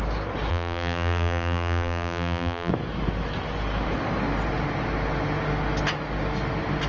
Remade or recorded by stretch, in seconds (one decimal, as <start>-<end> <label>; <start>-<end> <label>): 0.0-0.5 recorded; 0.5-2.7 remade; 2.7-6.9 recorded